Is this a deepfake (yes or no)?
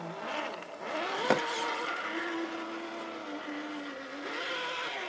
no